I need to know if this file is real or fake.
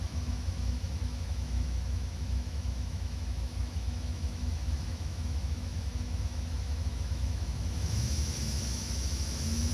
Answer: fake